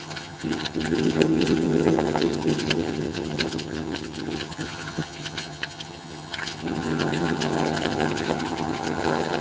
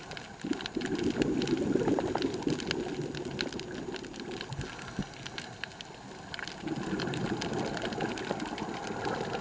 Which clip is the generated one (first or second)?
first